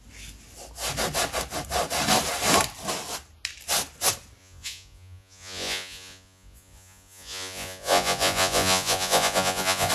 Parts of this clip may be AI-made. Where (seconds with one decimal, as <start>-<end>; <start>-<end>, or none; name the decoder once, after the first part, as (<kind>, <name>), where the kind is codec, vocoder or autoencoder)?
4.4-9.9 (vocoder, Vocos)